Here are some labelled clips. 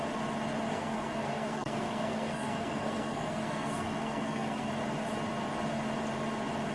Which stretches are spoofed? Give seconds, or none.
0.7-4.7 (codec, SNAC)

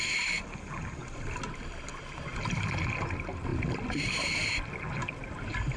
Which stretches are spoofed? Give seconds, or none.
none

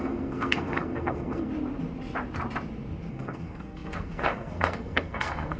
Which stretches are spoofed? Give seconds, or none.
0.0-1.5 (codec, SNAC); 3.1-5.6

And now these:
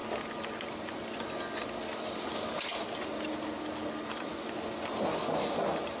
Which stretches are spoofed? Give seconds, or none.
none

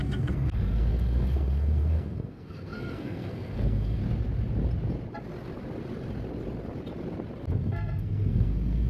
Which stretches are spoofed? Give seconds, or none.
0.0-4.0 (codec, SNAC); 7.5-8.9

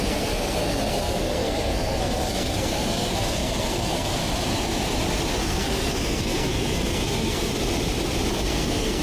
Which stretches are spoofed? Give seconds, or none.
0.0-4.2 (codec, SNAC); 5.4-7.5; 8.3-9.0

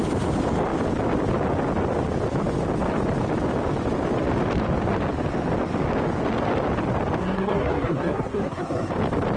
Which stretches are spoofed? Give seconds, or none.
7.2-8.9 (codec, SNAC)